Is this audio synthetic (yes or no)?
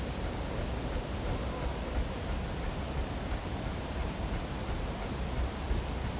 no